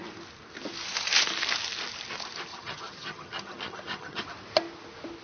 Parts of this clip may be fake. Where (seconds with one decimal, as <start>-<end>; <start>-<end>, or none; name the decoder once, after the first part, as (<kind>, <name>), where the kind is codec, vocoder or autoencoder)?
2.5-4.2 (vocoder, HiFi-GAN)